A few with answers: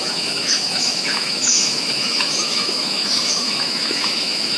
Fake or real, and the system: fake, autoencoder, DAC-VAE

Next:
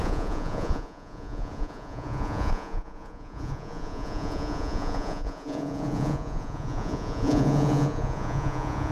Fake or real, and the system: fake, vocoder, Vocos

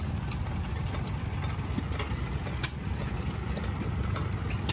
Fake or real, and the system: real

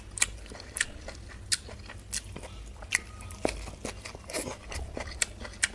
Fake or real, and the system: real